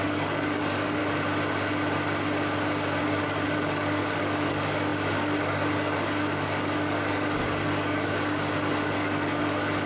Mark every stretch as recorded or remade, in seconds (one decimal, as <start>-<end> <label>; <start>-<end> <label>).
0.0-1.0 remade; 1.0-3.0 recorded; 3.0-9.9 remade